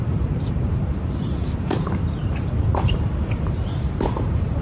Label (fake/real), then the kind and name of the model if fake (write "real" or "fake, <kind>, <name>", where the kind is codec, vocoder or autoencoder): fake, vocoder, BigVGAN v2